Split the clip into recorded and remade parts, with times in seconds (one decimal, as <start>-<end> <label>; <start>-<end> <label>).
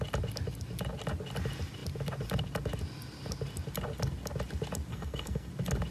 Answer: 0.0-4.9 recorded; 4.9-5.5 remade; 5.5-5.9 recorded